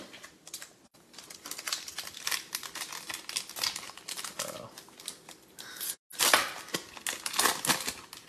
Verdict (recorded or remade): recorded